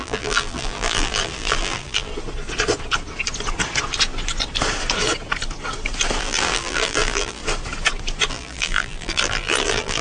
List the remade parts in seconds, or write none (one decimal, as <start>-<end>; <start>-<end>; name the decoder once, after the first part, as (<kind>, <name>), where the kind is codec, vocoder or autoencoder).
0.0-2.1 (vocoder, BigVGAN v2); 6.2-7.4; 8.3-10.0